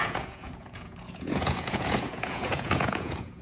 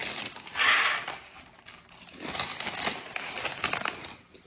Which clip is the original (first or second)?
second